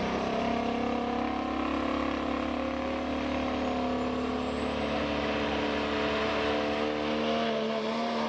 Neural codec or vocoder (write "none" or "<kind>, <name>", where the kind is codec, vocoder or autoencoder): none